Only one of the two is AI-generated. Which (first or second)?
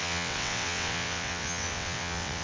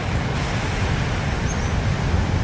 first